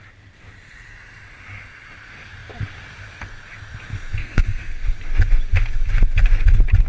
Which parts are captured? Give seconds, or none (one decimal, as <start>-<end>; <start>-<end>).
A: 0.0-4.2; 4.8-6.9